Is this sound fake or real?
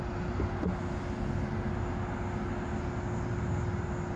real